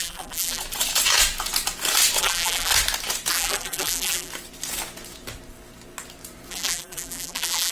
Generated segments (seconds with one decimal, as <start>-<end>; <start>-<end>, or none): 0.0-0.6; 2.2-2.7; 3.3-4.3; 6.5-7.7